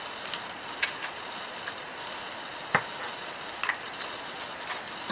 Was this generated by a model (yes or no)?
no